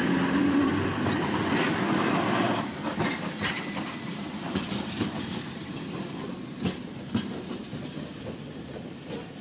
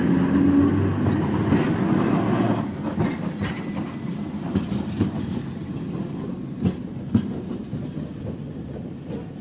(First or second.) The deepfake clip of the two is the first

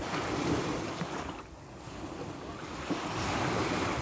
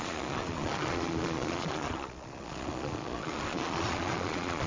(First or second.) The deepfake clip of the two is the second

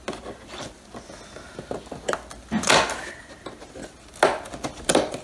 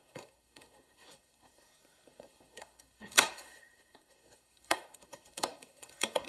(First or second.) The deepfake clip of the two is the second